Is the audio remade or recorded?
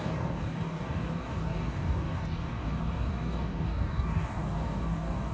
remade